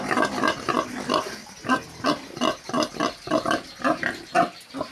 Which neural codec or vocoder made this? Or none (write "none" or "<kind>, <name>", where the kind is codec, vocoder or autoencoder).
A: none